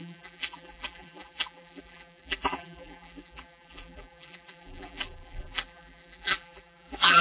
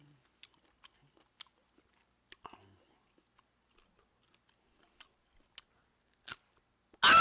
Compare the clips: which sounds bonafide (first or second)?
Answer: second